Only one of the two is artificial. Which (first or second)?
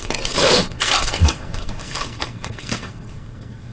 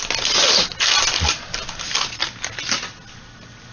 first